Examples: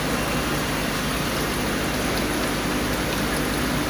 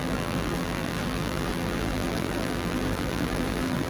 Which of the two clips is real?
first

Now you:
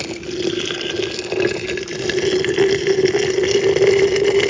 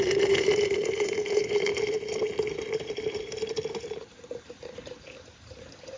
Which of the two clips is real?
first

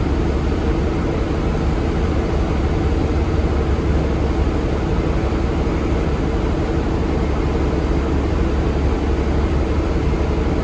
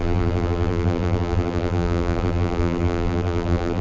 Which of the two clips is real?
first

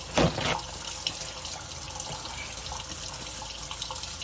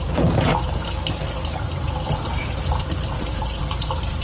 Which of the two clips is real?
first